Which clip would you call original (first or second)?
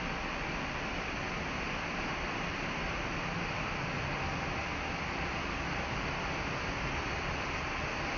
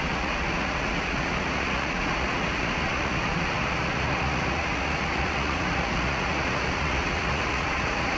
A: first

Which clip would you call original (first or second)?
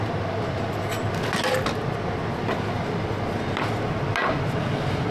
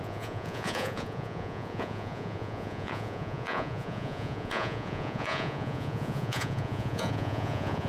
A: first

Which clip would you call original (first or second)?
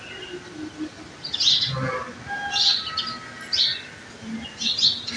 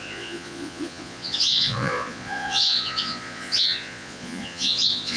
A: first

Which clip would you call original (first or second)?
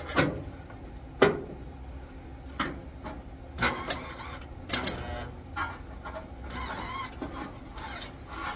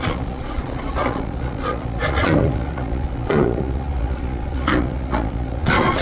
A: first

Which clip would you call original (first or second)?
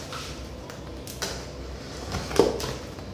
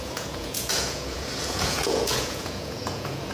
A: first